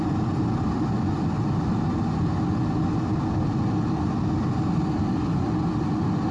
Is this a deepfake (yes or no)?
no